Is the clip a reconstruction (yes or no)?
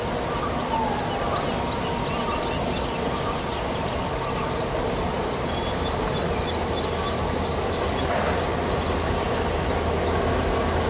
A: no